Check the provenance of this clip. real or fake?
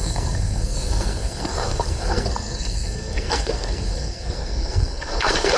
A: fake